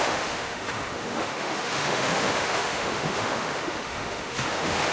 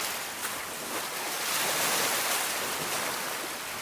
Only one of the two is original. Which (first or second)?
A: second